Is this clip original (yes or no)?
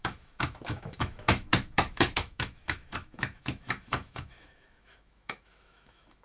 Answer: no